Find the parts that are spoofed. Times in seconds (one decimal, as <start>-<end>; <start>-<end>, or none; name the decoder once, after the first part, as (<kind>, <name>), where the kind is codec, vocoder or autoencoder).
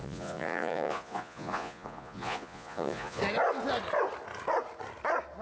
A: 0.0-3.2 (vocoder, Vocos)